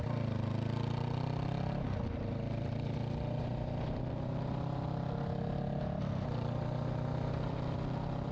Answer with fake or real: real